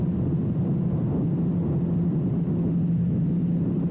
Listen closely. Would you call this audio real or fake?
real